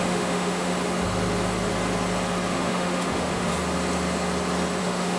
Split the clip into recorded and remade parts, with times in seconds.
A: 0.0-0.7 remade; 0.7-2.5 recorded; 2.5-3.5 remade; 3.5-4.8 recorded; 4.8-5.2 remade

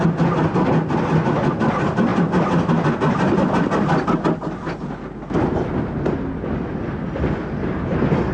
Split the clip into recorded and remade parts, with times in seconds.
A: 0.0-8.3 recorded

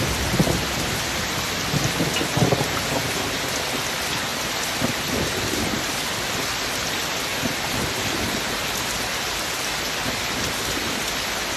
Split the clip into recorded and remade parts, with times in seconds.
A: 0.0-11.6 recorded

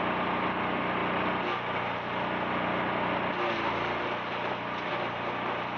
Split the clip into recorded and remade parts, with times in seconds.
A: 0.0-5.8 recorded

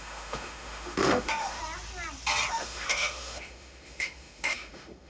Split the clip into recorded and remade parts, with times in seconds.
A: 0.0-1.6 remade; 1.6-2.5 recorded; 2.5-5.1 remade